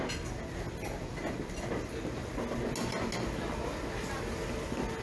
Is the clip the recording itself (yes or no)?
yes